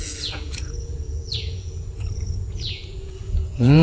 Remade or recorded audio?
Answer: remade